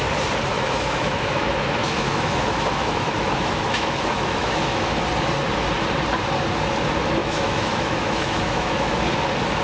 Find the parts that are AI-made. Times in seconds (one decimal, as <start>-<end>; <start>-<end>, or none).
0.5-5.0; 7.2-9.1

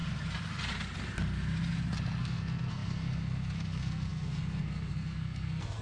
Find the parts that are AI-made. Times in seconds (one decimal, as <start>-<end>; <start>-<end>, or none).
2.2-5.8